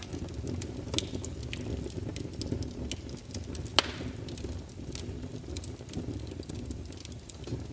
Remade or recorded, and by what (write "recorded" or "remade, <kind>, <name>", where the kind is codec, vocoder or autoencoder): recorded